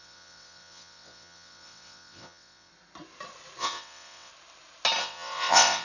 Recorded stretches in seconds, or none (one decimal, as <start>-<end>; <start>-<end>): 2.7-3.6; 4.3-5.0